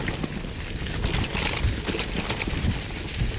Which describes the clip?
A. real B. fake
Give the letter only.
A